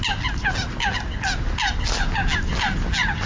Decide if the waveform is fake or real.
real